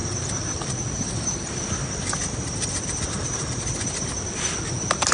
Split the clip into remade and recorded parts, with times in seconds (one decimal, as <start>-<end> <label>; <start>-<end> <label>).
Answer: 0.0-5.1 recorded